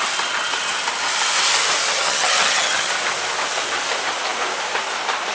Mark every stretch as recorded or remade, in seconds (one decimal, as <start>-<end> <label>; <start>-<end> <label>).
0.0-1.9 recorded; 1.9-2.9 remade; 2.9-5.3 recorded